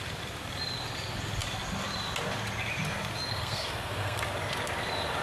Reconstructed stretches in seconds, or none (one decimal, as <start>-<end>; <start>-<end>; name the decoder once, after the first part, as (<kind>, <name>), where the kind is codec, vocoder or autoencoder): 3.3-4.2 (codec, SNAC)